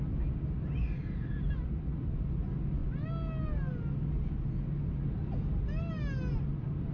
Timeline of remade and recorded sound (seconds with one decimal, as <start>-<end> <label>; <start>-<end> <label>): 0.0-6.9 recorded